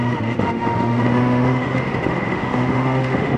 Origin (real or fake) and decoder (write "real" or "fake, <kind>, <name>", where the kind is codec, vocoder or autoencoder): fake, autoencoder, DAC-VAE